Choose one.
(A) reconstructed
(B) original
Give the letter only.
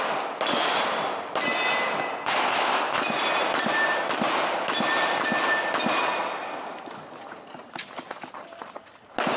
B